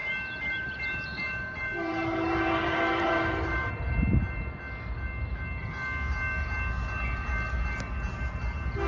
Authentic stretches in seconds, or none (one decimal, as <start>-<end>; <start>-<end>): 3.6-8.9